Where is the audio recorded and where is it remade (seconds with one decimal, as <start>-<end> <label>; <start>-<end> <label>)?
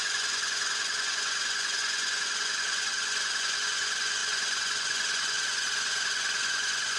0.0-7.0 remade